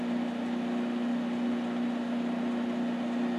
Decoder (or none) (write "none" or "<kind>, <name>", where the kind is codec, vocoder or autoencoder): none